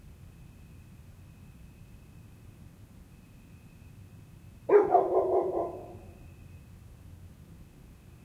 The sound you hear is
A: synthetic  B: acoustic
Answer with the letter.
B